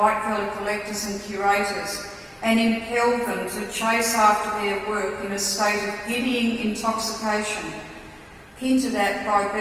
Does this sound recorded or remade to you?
recorded